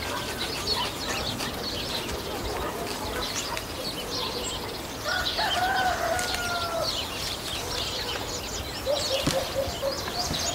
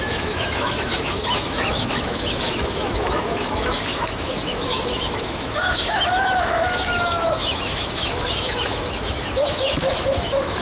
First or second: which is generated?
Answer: second